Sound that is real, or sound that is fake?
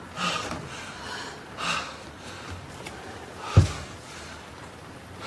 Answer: real